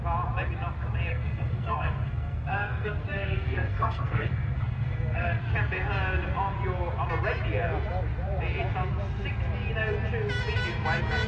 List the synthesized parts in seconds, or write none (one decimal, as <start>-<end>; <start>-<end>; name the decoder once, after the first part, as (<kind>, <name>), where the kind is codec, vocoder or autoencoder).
1.1-5.4 (codec, SNAC)

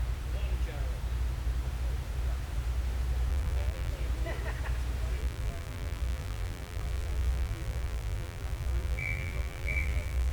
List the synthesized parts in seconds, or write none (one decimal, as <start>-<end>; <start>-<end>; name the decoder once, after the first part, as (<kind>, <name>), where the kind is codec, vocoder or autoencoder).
3.3-3.9 (vocoder, BigVGAN v2); 5.2-10.3

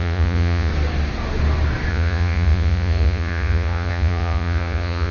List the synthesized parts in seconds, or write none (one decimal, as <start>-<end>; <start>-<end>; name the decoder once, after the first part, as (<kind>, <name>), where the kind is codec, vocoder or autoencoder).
0.0-0.7 (vocoder, Vocos); 1.9-5.1

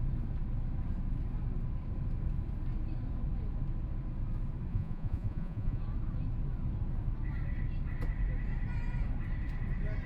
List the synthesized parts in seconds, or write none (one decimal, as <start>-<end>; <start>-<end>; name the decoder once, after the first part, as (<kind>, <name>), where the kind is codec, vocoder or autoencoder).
4.7-5.8 (vocoder, Vocos)

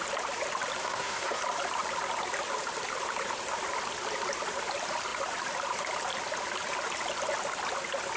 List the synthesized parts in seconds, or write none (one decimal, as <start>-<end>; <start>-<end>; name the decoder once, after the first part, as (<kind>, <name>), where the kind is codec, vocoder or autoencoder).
0.8-1.4 (codec, SNAC)

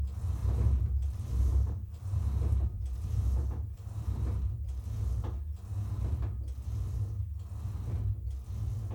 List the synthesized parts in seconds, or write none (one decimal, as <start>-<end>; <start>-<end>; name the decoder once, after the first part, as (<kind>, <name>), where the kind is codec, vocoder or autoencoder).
0.4-5.0 (vocoder, BigVGAN v2)